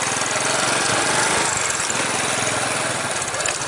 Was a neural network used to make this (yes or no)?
no